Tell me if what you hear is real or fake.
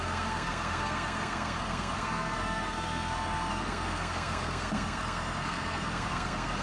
fake